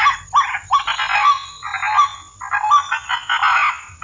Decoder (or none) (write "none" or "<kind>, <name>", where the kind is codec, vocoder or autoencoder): none